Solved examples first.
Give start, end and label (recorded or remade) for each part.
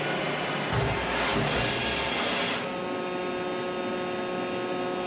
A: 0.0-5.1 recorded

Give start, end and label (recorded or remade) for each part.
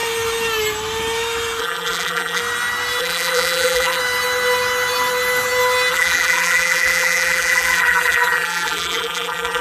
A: 0.0-1.6 recorded; 1.6-2.4 remade; 2.4-3.0 recorded; 3.0-4.0 remade; 4.0-5.9 recorded; 5.9-9.6 remade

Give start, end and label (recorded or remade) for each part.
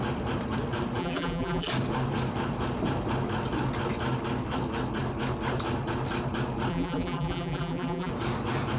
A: 0.0-1.0 recorded; 1.0-1.7 remade; 1.7-6.7 recorded; 6.7-8.1 remade; 8.1-8.8 recorded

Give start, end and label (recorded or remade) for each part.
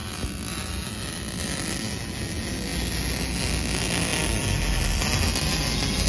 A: 0.0-6.1 recorded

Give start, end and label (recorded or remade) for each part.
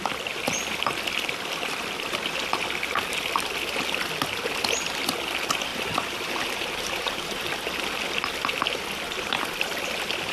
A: 0.0-5.7 recorded; 5.7-7.4 remade; 7.4-10.3 recorded